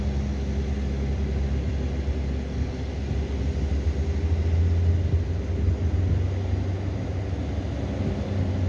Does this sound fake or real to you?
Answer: real